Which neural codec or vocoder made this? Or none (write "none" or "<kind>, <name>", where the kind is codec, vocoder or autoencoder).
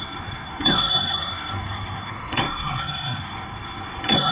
codec, SNAC